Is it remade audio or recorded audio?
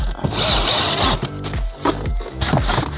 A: recorded